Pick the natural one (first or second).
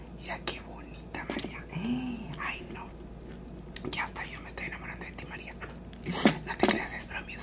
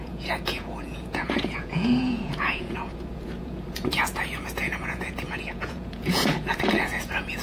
first